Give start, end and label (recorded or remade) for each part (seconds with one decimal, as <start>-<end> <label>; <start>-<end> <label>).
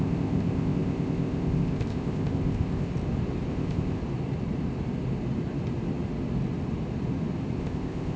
0.0-2.9 remade; 2.9-3.5 recorded; 3.5-4.0 remade; 4.0-7.6 recorded; 7.6-8.2 remade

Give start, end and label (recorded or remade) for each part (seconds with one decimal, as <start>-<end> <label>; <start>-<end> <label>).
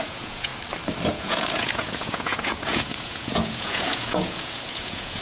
0.0-0.5 remade; 0.5-1.1 recorded; 1.1-5.2 remade